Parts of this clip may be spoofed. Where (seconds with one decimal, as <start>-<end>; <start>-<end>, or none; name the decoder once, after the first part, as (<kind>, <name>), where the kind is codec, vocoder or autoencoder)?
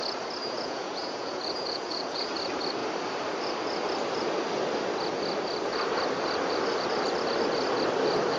0.4-2.3 (vocoder, Vocos)